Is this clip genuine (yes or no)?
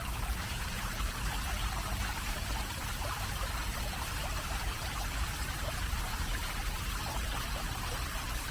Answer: no